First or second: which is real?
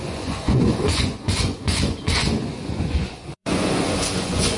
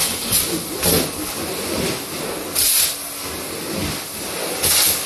second